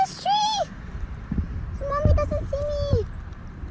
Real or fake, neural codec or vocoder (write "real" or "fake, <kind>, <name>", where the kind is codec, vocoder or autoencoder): fake, vocoder, BigVGAN v2